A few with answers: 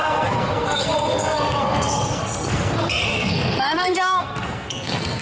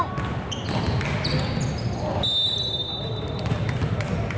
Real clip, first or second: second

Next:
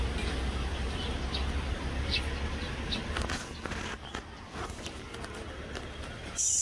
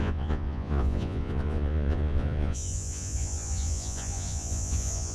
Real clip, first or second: first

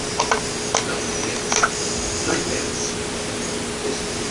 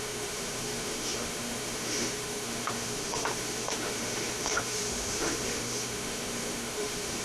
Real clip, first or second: first